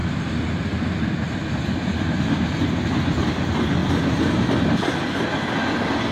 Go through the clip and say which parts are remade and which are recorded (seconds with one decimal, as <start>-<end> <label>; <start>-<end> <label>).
0.0-6.1 recorded